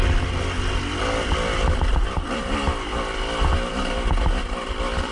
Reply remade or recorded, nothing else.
recorded